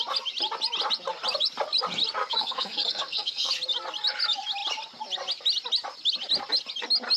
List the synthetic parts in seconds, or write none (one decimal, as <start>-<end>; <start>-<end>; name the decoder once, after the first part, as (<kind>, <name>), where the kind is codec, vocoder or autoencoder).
2.2-3.5 (codec, SNAC)